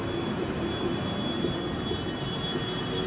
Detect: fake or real real